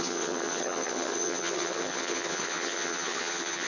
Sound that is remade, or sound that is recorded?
remade